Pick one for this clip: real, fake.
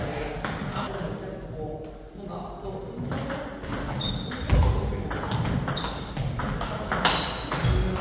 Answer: real